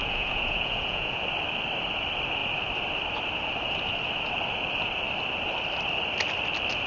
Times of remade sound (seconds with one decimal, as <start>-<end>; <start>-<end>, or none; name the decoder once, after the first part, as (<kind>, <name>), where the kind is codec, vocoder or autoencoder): 0.0-1.2 (vocoder, Vocos)